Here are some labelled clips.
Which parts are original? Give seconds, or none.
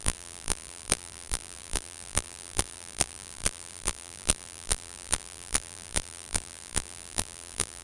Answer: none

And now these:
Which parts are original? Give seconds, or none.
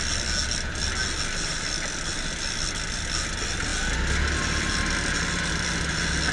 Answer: 0.0-6.3